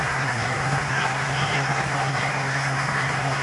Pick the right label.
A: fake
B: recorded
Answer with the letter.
A